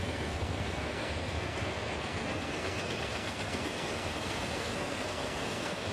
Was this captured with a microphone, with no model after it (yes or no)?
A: no